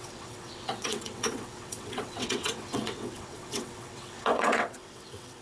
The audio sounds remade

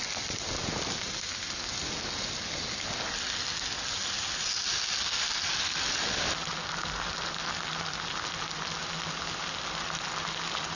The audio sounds recorded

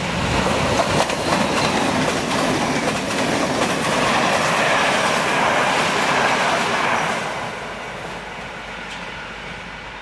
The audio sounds recorded